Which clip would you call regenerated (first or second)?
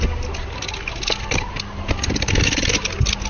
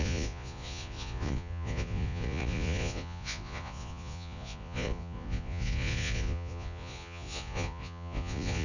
second